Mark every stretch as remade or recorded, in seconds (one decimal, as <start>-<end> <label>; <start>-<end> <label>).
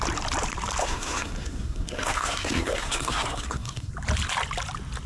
0.0-0.8 recorded; 0.8-3.9 remade; 3.9-5.1 recorded